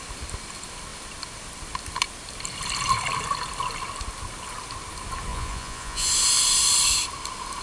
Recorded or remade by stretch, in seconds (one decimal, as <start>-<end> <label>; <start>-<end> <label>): 0.0-5.3 recorded; 5.3-6.1 remade; 6.1-7.6 recorded